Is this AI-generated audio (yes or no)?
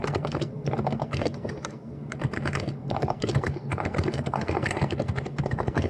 yes